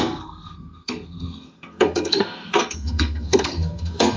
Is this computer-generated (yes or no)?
yes